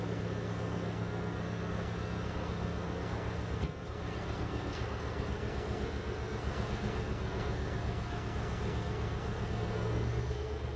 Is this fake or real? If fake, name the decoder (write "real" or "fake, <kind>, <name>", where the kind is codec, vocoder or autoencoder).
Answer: fake, codec, SNAC